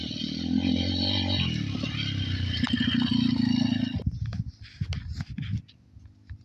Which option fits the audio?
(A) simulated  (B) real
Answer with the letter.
B